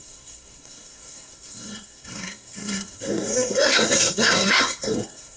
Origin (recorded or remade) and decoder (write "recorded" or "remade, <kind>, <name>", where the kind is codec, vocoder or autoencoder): remade, codec, SNAC